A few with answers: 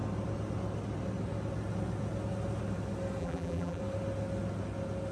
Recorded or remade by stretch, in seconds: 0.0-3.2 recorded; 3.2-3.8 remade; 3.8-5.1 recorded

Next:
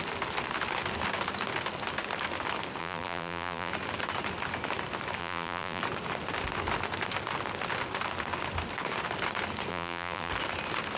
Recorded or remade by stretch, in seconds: 0.0-2.8 recorded; 2.8-3.7 remade; 3.7-5.2 recorded; 5.2-5.8 remade; 5.8-9.7 recorded; 9.7-10.3 remade; 10.3-11.0 recorded

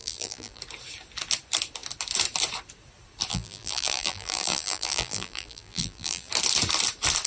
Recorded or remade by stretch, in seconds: 0.0-0.6 remade; 0.6-3.3 recorded; 3.3-6.3 remade; 6.3-7.3 recorded

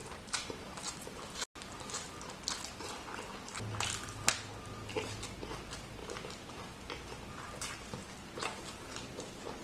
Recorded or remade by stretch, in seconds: 0.0-0.9 remade; 0.9-6.0 recorded; 6.0-7.0 remade; 7.0-9.6 recorded

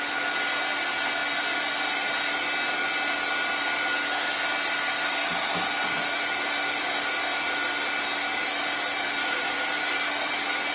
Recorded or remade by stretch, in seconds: 0.0-9.2 recorded; 9.2-10.7 remade

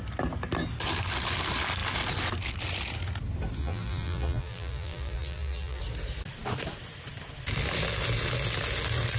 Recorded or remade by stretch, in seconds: 0.0-3.6 recorded; 3.6-5.8 remade; 5.8-9.2 recorded

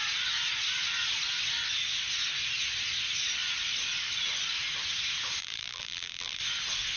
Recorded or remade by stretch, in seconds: 0.0-5.4 recorded; 5.4-6.4 remade; 6.4-7.0 recorded